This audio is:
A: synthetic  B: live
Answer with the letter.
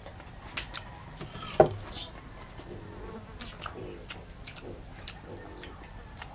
B